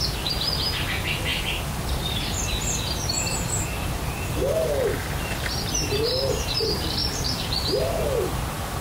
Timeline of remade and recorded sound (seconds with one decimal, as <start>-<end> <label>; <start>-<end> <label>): 0.0-5.0 recorded; 5.0-5.7 remade; 5.7-7.0 recorded; 7.0-7.8 remade; 7.8-8.8 recorded